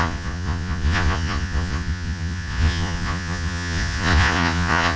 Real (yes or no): no